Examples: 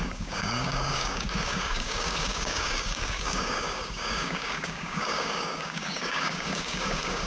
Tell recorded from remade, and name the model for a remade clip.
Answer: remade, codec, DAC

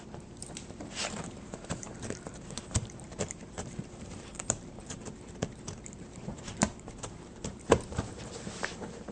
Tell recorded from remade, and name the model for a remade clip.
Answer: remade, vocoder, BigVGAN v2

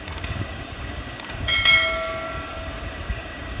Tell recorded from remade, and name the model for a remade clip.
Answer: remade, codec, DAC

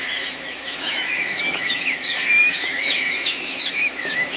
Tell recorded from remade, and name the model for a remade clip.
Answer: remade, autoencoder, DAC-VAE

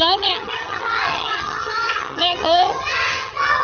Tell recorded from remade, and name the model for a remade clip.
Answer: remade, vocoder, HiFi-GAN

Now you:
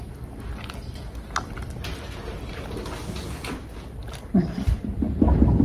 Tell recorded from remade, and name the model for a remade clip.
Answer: recorded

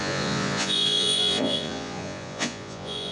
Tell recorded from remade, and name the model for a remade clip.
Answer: remade, vocoder, Vocos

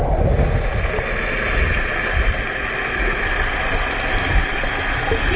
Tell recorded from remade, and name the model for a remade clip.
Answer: recorded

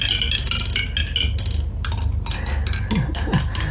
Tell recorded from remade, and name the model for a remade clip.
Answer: recorded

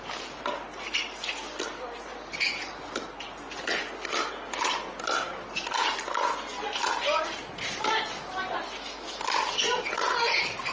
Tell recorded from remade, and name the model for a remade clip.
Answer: recorded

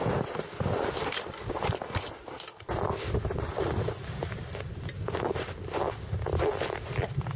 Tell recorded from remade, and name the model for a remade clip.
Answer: recorded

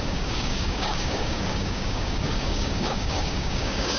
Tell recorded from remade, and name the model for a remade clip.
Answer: remade, codec, DAC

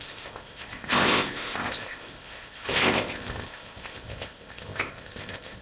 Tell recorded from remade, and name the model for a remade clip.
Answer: remade, codec, ZipCodec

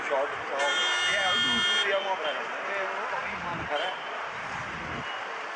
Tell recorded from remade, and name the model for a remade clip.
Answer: recorded